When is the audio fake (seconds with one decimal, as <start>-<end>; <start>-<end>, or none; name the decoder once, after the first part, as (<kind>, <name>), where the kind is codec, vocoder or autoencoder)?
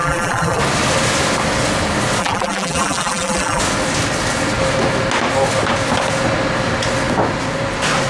0.0-0.6 (vocoder, BigVGAN v2); 2.2-3.6